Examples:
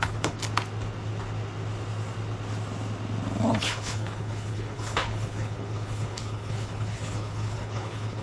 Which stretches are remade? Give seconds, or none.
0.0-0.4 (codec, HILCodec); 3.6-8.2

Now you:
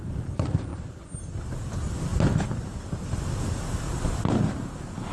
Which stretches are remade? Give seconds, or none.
none

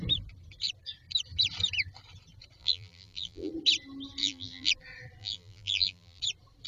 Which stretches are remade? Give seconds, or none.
2.6-3.5 (vocoder, BigVGAN v2); 4.2-4.7; 5.2-6.2

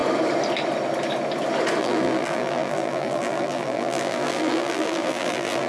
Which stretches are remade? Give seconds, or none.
1.8-5.7 (vocoder, BigVGAN v2)